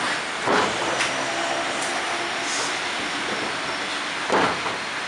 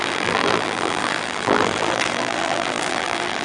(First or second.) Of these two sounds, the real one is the first